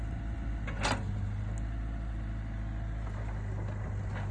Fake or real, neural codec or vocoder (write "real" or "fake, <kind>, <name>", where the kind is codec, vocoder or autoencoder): real